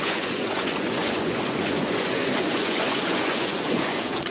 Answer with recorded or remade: remade